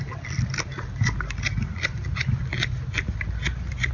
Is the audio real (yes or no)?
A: yes